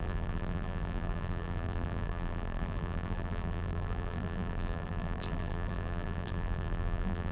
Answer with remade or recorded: remade